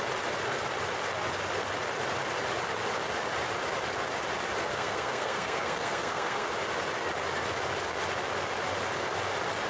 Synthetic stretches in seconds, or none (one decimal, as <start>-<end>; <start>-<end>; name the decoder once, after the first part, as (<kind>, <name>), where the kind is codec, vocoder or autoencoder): 4.7-6.5 (codec, SNAC)